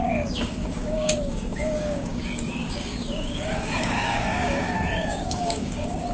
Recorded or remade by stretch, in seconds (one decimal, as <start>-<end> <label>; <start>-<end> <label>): 0.0-6.1 remade